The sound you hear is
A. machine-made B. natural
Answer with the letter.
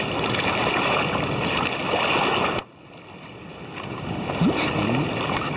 B